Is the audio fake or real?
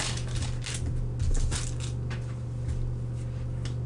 real